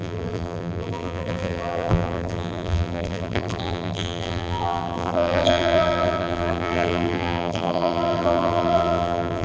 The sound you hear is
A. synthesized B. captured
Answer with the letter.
A